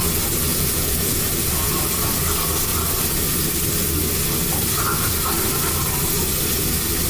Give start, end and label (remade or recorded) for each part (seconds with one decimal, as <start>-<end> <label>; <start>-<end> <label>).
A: 0.0-0.5 recorded; 0.5-1.7 remade; 1.7-7.1 recorded